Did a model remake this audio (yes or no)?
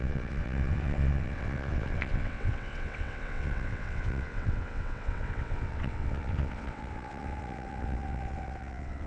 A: yes